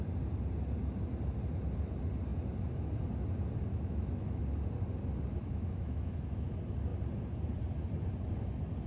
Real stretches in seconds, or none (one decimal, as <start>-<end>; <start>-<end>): 0.0-3.7; 4.4-5.3; 6.5-8.9